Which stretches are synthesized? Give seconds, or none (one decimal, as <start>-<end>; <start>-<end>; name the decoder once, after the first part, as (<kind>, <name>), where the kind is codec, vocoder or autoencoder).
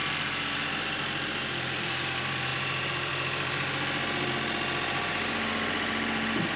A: 0.0-6.6 (vocoder, BigVGAN v2)